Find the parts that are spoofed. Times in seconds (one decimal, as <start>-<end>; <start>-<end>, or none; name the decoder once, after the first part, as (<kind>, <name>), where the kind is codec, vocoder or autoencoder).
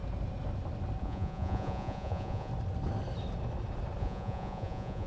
1.0-2.5 (vocoder, Vocos); 4.0-5.1